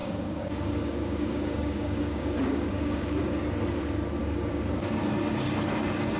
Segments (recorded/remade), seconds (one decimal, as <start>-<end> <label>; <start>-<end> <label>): 0.0-3.2 remade; 3.2-4.2 recorded; 4.2-5.1 remade; 5.1-6.2 recorded